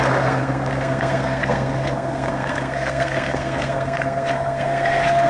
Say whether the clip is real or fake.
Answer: fake